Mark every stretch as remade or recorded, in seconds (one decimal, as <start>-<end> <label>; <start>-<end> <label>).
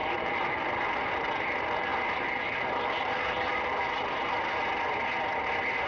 0.0-5.9 recorded